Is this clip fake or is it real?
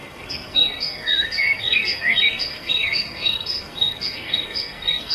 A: fake